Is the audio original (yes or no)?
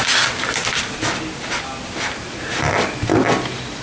yes